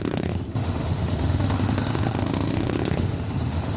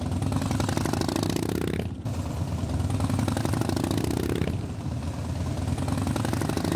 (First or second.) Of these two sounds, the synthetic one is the first